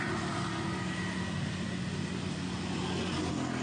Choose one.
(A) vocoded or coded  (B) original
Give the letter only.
B